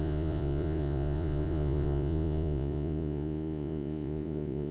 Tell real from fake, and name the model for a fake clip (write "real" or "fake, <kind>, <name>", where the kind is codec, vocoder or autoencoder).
fake, vocoder, Vocos